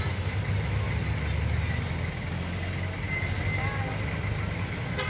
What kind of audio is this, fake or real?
real